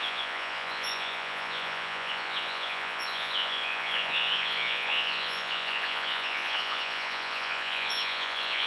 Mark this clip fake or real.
fake